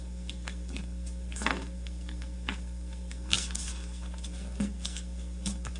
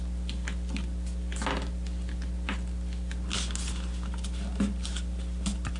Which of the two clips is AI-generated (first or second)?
first